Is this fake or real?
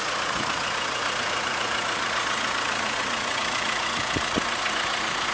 fake